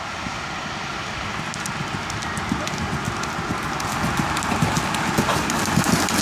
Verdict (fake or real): real